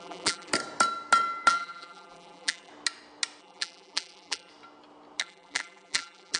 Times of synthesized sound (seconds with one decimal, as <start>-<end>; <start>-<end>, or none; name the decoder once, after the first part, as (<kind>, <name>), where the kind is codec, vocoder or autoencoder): 0.0-0.5 (vocoder, BigVGAN v2); 1.5-2.7; 3.4-4.5; 5.2-6.4